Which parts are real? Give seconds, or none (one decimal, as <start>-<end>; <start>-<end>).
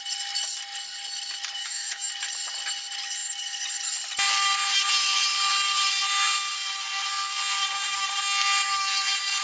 0.0-1.6; 2.1-9.4